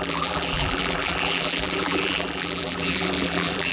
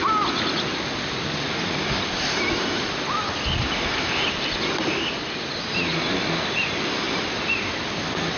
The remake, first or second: first